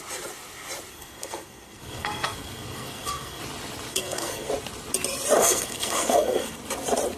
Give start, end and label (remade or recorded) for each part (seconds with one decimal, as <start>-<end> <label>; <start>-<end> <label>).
0.0-0.9 recorded; 0.9-3.4 remade; 3.4-3.9 recorded; 3.9-4.5 remade; 4.5-5.4 recorded; 5.4-6.6 remade; 6.6-7.2 recorded

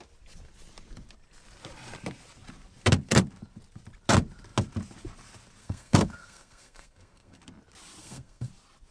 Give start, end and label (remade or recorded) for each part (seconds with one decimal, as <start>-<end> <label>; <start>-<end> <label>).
0.0-5.6 recorded; 5.6-7.4 remade; 7.4-8.0 recorded; 8.0-8.5 remade; 8.5-8.9 recorded

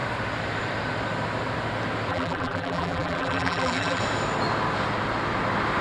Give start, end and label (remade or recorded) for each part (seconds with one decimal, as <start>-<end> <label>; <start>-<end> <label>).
0.0-2.1 recorded; 2.1-4.0 remade; 4.0-5.8 recorded

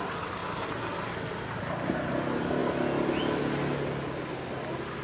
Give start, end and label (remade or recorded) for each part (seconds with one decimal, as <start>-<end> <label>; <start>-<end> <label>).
0.0-5.0 recorded

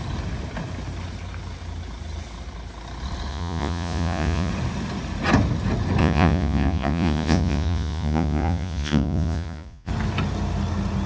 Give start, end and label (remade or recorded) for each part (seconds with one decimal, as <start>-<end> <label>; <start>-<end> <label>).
0.0-3.3 recorded; 3.3-4.5 remade; 4.5-6.0 recorded; 6.0-9.9 remade; 9.9-11.1 recorded